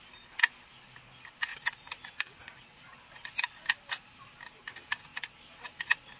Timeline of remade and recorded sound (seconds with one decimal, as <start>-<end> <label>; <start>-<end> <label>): 0.0-1.5 recorded; 1.5-3.0 remade; 3.0-6.2 recorded